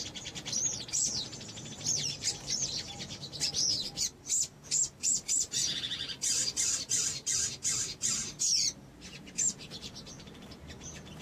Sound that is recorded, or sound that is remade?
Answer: remade